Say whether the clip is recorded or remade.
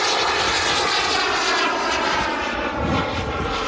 recorded